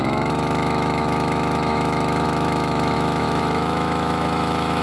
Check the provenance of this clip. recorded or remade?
remade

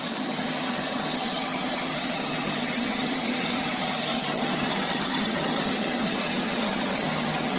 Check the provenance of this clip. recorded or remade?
remade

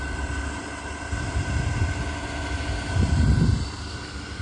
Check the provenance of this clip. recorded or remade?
remade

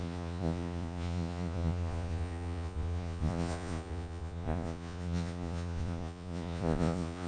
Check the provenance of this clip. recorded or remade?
remade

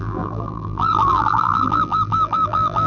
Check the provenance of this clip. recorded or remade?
remade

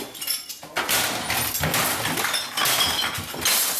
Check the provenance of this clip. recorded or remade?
recorded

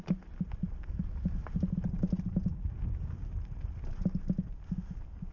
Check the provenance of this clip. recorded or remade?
recorded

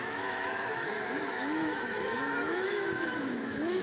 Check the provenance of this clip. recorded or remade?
remade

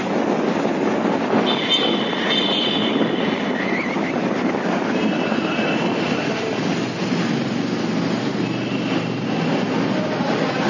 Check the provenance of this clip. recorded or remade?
recorded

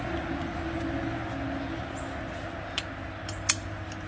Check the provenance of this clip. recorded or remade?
recorded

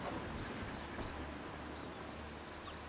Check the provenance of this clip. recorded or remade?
recorded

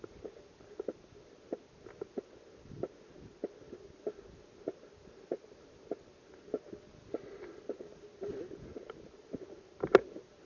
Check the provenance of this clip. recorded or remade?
recorded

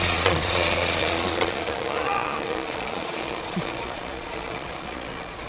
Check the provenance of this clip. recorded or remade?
remade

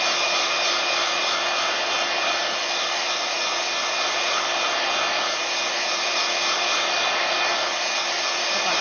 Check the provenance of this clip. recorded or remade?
recorded